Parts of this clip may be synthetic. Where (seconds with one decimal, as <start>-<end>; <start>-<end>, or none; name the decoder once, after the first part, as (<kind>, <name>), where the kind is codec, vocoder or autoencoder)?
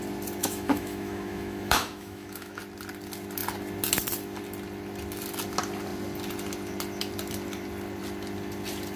0.4-2.6 (autoencoder, DAC-VAE)